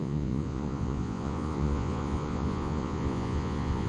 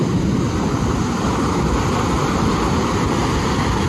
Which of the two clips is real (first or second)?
second